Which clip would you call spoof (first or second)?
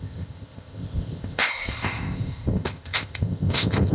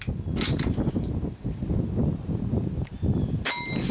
first